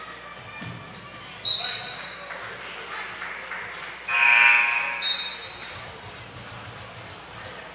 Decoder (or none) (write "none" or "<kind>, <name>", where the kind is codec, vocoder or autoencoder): none